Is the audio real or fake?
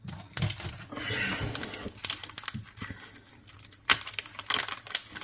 real